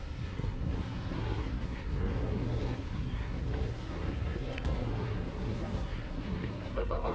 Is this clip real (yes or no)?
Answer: no